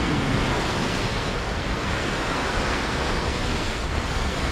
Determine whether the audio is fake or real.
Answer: fake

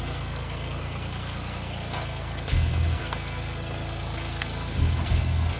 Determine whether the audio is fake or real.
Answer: fake